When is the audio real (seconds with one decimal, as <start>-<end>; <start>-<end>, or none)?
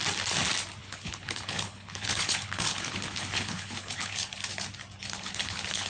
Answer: 0.0-0.8; 4.3-5.0